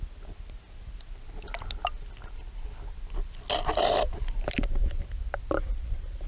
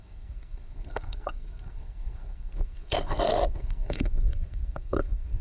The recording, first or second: first